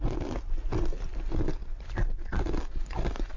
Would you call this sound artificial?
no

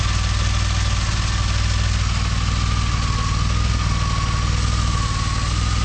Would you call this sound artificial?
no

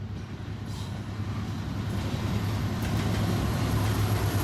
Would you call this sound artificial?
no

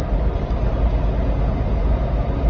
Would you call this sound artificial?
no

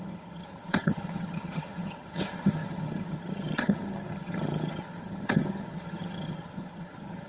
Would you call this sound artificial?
yes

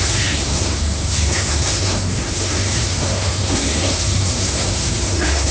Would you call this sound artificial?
yes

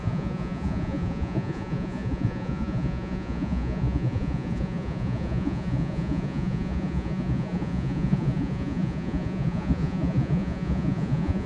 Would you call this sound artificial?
yes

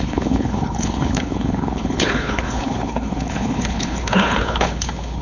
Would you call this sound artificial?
yes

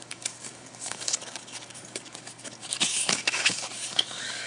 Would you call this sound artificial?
yes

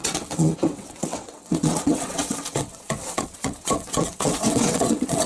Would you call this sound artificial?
yes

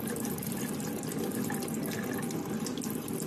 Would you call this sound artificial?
no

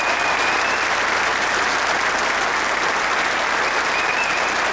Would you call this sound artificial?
no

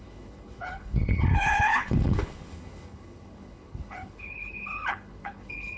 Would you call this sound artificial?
yes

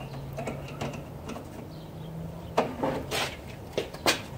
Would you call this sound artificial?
no